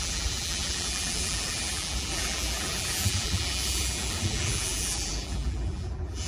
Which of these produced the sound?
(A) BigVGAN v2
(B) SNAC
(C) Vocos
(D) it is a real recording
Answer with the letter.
A